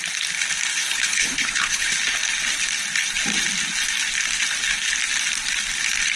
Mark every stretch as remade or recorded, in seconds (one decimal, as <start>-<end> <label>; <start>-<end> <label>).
0.0-0.7 recorded; 0.7-1.9 remade; 1.9-6.2 recorded